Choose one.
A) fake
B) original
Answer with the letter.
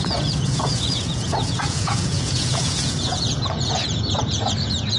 A